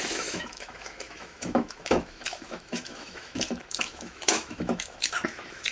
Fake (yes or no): yes